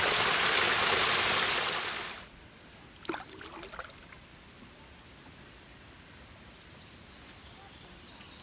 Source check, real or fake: real